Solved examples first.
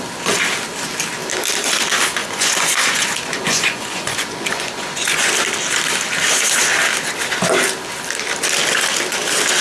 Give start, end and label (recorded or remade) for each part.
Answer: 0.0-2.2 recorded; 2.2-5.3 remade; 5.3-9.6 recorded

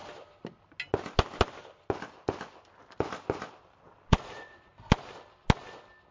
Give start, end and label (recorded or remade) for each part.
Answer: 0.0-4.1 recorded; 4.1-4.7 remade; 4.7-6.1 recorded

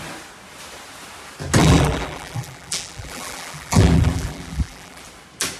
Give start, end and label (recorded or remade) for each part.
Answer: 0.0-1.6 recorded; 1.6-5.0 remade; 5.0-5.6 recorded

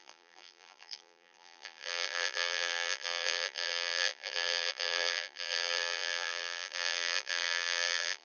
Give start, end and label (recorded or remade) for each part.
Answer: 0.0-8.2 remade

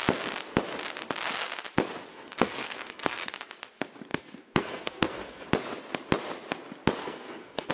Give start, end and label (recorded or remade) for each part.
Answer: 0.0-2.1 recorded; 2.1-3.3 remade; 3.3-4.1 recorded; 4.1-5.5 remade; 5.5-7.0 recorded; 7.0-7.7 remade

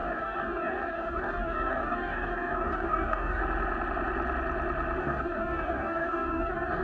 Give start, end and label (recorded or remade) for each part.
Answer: 0.0-3.4 remade; 3.4-5.0 recorded; 5.0-6.8 remade

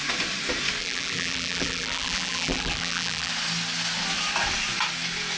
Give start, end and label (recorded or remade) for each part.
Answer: 0.0-0.8 recorded; 0.8-3.3 remade; 3.3-5.4 recorded